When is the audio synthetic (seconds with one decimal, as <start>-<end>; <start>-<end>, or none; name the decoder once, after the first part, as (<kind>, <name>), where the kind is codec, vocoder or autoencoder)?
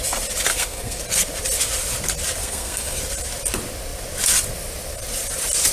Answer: 0.5-1.0 (codec, SNAC); 2.4-3.0